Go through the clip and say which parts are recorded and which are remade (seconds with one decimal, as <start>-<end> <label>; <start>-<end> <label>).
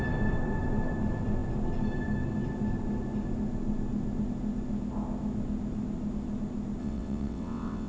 0.0-6.8 recorded; 6.8-7.9 remade